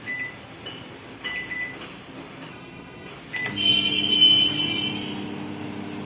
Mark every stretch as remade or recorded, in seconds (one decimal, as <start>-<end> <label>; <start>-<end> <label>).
0.0-2.5 recorded; 2.5-3.1 remade; 3.1-6.1 recorded